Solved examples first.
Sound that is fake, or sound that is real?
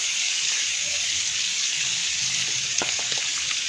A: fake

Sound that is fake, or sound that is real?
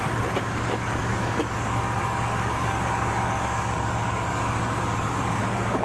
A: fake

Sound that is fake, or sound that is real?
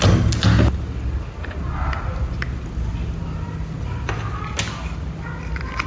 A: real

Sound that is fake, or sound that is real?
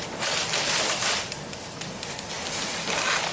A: real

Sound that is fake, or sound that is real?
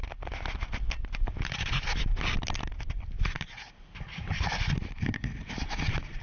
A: real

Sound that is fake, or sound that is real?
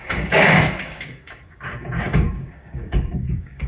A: fake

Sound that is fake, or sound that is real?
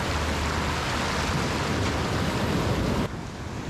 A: real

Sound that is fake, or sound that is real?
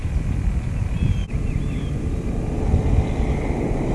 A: real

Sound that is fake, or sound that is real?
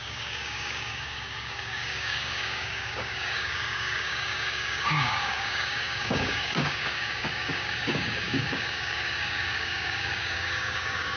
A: fake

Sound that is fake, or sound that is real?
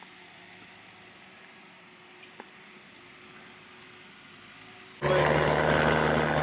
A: real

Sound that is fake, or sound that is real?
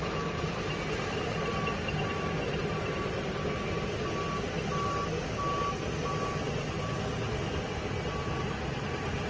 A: real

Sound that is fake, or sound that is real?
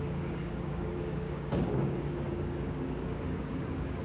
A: fake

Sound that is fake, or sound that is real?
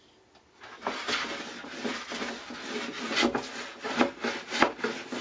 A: real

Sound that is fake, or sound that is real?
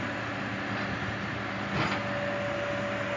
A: real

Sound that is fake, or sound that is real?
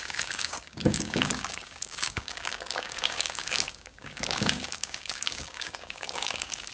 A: fake